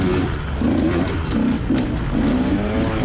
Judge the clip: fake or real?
real